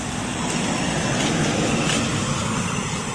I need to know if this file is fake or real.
real